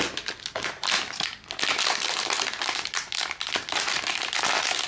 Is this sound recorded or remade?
remade